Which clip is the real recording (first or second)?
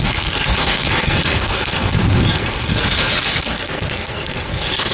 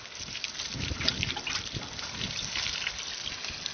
second